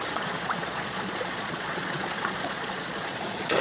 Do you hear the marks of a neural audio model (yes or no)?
yes